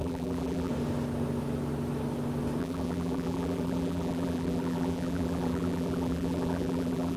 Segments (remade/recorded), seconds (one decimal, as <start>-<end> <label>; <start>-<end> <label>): 0.0-0.7 remade; 0.7-2.6 recorded; 2.6-7.2 remade